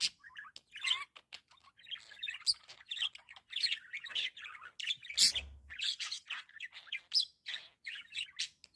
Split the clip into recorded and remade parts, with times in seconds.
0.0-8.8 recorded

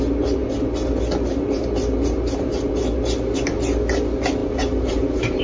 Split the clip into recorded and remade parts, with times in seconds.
0.0-4.4 recorded; 4.4-5.4 remade

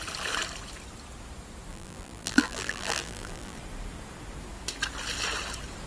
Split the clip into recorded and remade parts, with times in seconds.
0.0-1.7 recorded; 1.7-3.6 remade; 3.6-5.9 recorded

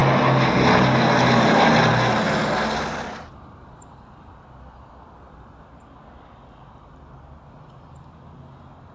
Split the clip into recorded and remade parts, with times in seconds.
0.0-8.9 recorded

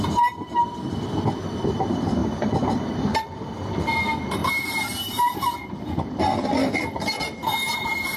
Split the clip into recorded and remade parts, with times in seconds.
0.0-4.4 recorded; 4.4-6.2 remade; 6.2-8.2 recorded

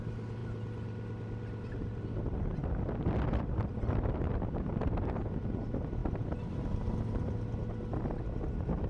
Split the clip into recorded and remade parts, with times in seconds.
0.0-0.4 recorded; 0.4-2.2 remade; 2.2-2.6 recorded; 2.6-5.4 remade; 5.4-8.9 recorded

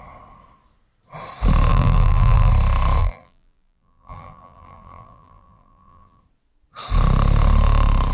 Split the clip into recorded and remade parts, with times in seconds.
0.0-1.7 recorded; 1.7-2.5 remade; 2.5-3.0 recorded; 3.0-6.2 remade; 6.2-8.1 recorded